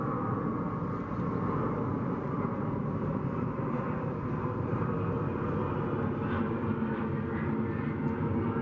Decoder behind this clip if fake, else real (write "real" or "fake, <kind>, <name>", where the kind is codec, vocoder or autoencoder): real